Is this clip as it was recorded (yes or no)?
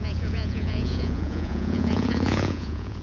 no